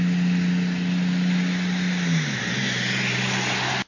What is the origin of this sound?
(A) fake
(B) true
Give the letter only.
B